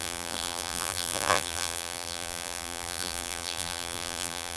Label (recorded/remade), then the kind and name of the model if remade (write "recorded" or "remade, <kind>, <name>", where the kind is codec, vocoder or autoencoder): remade, vocoder, BigVGAN v2